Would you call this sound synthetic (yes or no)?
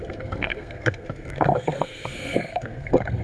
yes